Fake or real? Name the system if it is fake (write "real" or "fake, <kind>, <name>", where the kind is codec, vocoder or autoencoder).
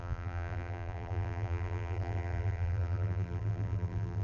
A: fake, vocoder, BigVGAN v2